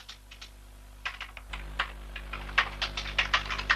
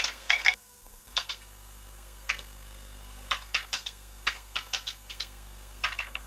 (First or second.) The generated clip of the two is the second